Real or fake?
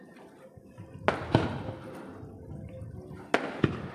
real